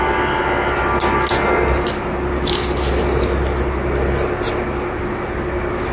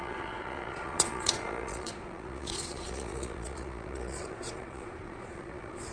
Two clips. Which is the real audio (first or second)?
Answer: first